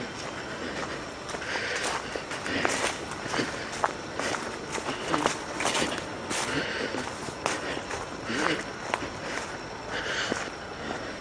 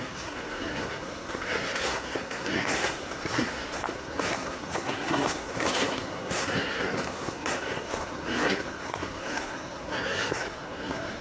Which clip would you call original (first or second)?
first